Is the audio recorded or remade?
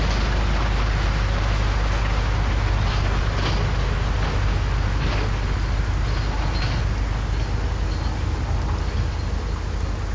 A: recorded